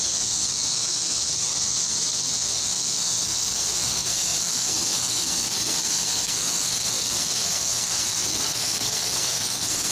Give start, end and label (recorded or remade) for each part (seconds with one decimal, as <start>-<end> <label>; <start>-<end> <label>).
0.0-9.9 remade